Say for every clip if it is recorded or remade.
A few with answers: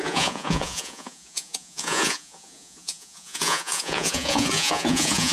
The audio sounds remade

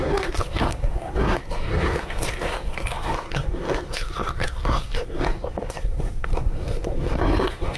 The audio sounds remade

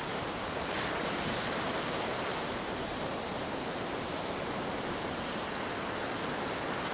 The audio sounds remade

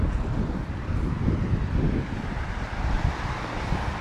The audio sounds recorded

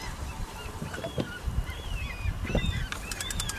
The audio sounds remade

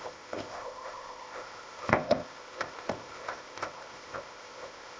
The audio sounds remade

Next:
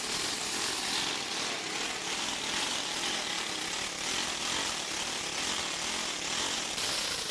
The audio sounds recorded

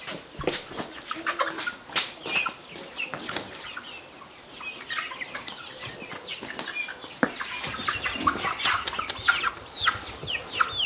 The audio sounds recorded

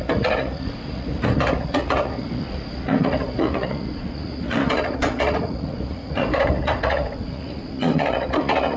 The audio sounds remade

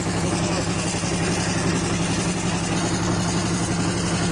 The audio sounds recorded